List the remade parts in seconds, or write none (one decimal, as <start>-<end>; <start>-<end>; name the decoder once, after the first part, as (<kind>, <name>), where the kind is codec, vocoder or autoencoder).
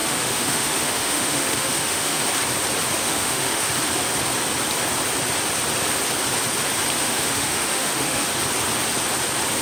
0.0-2.2 (autoencoder, DAC-VAE); 3.0-3.7; 7.0-8.4